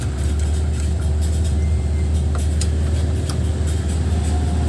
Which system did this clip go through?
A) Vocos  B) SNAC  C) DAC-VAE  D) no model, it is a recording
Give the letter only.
D